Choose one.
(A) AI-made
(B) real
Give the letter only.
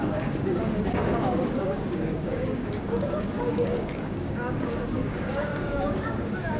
A